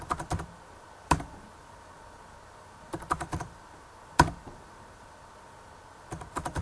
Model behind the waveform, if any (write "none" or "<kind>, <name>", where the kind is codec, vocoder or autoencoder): none